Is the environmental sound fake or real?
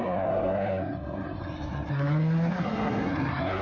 fake